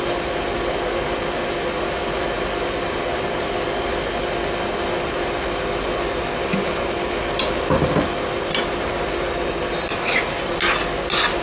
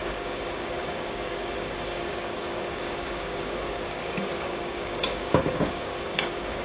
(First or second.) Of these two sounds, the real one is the first